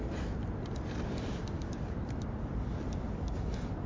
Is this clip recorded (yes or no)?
yes